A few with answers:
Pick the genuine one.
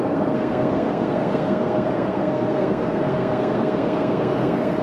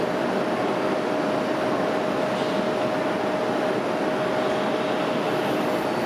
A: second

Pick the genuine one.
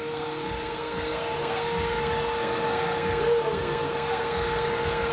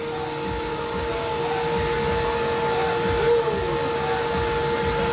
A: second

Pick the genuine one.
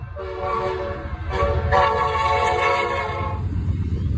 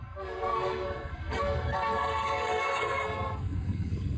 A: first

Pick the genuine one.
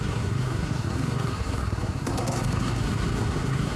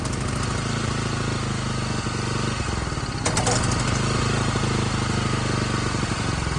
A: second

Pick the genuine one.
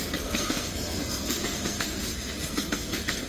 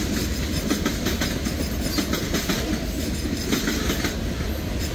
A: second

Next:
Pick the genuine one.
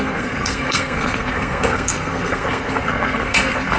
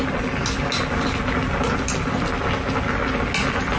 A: second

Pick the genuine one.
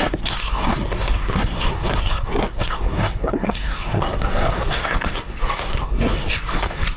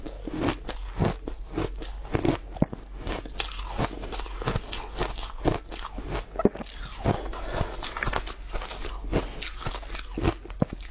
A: second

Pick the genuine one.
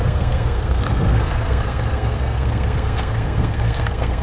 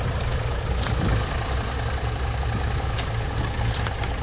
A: second